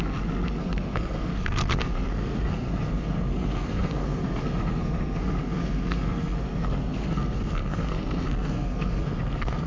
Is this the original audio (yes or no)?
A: no